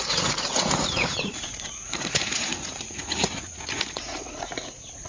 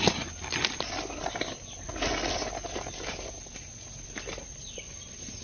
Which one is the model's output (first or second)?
first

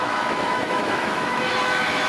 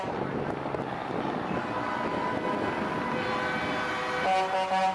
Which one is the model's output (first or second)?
first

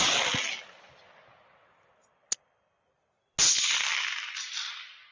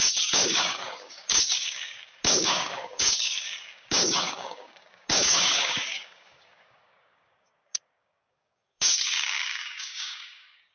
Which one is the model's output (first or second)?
second